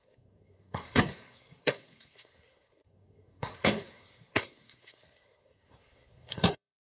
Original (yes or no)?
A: no